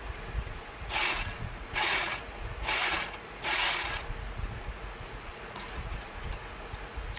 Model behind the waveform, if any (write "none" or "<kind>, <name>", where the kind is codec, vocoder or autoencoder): vocoder, Vocos